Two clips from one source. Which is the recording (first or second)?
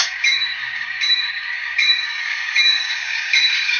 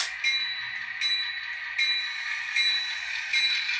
second